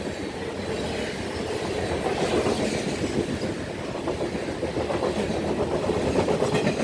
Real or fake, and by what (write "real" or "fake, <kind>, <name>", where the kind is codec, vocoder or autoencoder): real